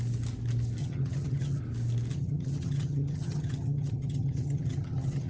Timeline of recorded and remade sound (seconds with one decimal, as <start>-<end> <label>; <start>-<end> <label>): 0.0-0.8 recorded; 0.8-1.6 remade; 1.6-2.1 recorded; 2.1-5.3 remade